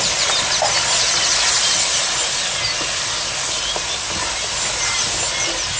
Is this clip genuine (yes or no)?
yes